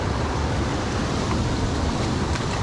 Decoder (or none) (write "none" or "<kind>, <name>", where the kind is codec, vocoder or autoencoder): none